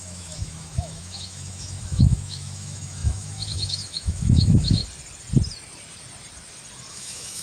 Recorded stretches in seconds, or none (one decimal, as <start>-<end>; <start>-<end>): 4.8-6.9